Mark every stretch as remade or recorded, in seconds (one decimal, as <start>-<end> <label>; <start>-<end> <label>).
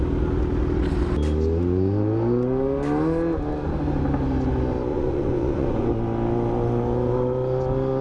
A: 0.0-4.9 recorded; 4.9-5.9 remade; 5.9-8.0 recorded